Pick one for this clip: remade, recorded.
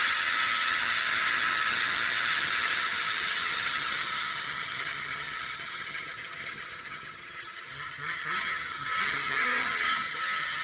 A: remade